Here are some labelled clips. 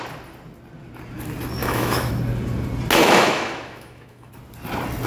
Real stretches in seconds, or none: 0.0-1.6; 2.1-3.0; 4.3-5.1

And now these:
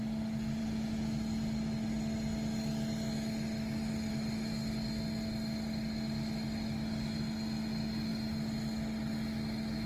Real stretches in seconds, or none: 0.0-9.9

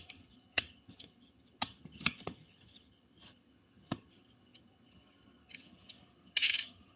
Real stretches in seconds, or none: none

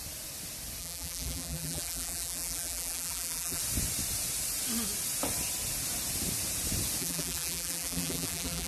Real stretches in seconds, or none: 0.0-0.8; 3.6-7.0